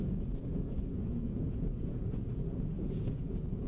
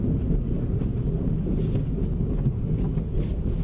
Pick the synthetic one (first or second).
first